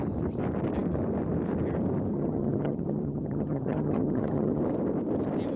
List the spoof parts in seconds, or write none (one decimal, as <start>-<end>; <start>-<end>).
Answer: 2.1-4.6